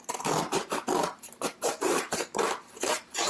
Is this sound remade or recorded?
remade